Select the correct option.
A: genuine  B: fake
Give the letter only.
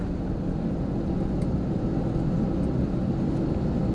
A